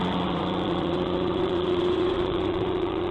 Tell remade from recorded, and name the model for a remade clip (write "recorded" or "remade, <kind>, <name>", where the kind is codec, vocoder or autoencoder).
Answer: remade, vocoder, Vocos